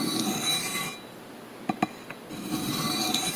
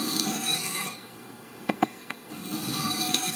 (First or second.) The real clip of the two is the first